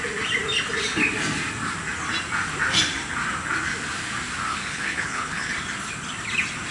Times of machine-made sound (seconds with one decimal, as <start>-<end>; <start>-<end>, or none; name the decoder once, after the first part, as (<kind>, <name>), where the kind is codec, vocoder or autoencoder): 4.5-5.5 (codec, HILCodec)